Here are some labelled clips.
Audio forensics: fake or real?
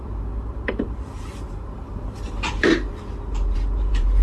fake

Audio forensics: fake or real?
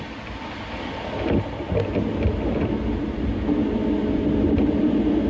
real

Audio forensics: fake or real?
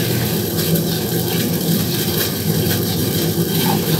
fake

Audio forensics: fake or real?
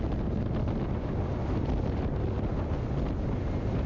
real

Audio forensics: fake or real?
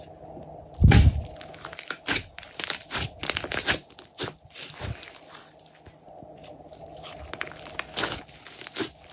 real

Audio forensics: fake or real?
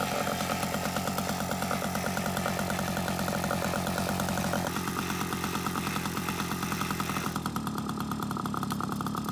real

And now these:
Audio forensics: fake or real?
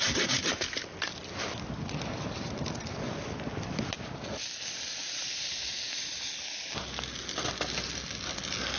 real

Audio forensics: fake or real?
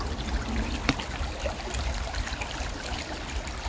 real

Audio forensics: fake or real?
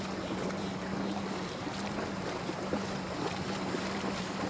real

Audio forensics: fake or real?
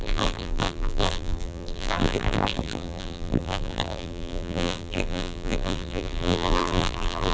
fake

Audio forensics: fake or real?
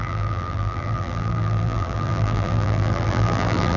fake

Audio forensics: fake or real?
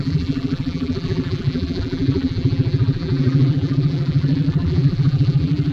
fake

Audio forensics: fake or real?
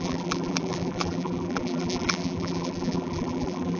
fake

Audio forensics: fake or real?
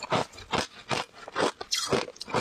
real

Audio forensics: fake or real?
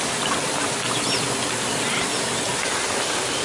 real